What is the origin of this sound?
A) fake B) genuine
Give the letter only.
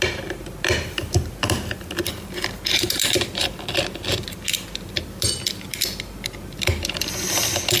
B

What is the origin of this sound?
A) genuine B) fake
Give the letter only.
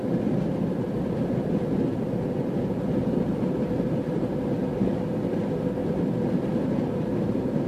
A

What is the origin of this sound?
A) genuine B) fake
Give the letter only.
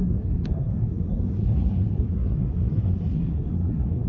B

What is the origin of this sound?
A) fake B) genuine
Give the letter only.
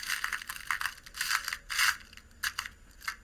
B